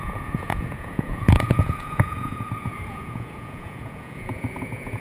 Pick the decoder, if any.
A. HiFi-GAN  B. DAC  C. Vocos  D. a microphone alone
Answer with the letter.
C